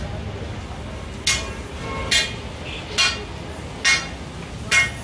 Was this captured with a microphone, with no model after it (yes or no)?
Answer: yes